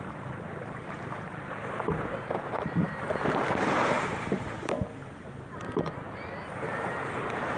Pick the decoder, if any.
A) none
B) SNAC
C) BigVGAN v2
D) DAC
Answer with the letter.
C